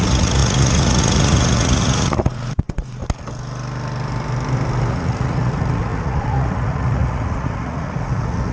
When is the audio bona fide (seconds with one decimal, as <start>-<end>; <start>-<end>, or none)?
3.0-4.9